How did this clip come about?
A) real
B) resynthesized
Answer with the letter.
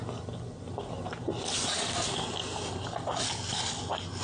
A